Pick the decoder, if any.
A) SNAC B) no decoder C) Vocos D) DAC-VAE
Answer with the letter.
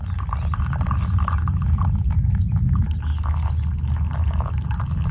B